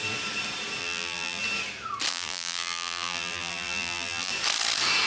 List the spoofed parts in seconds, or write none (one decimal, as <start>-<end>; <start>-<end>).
0.8-1.4; 2.1-4.3